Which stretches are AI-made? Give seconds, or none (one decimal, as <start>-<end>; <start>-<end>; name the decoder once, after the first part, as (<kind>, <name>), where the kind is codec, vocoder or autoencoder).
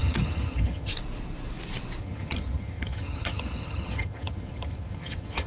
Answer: 0.0-0.9 (vocoder, HiFi-GAN); 2.0-5.5